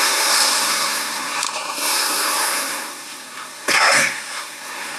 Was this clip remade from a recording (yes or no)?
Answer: yes